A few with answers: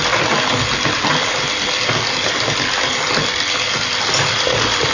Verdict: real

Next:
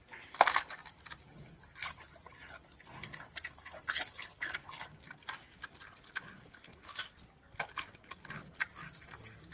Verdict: real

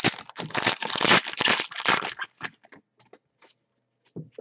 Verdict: real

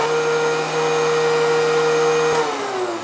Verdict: real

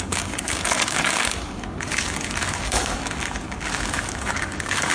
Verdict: fake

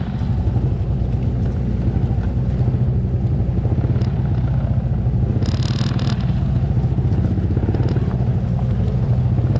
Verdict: real